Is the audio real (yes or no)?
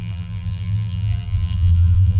no